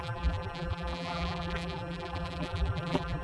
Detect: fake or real fake